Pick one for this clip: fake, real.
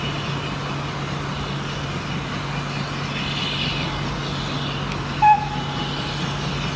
real